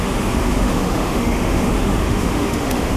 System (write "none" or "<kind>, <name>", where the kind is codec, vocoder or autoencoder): autoencoder, DAC-VAE